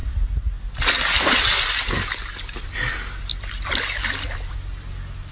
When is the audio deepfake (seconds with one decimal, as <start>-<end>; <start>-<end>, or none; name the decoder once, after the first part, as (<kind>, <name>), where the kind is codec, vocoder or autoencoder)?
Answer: none